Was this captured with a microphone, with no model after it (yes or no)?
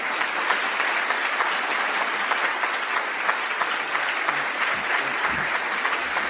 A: yes